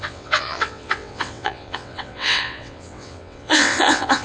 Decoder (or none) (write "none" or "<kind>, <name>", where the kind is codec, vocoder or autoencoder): vocoder, WaveNeXt